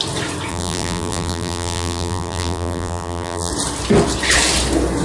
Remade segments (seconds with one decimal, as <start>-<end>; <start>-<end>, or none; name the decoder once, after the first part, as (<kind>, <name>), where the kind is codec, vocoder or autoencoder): 0.5-3.5 (vocoder, BigVGAN v2)